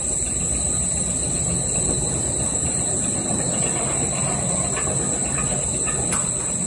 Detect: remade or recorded recorded